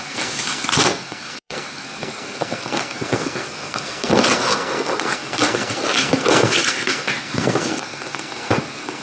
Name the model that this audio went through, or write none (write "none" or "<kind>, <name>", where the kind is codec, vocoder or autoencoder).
codec, SNAC